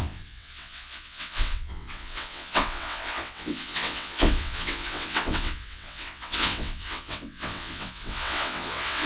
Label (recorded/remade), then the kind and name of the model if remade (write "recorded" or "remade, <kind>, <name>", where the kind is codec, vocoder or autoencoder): remade, vocoder, WaveNeXt